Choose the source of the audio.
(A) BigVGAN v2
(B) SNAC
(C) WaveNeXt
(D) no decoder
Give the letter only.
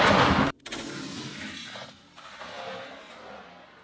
D